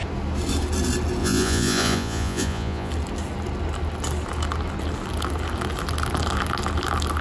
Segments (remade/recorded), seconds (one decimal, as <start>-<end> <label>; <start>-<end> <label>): 0.0-1.2 recorded; 1.2-2.9 remade; 2.9-7.2 recorded